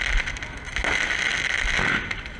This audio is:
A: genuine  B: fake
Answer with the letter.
A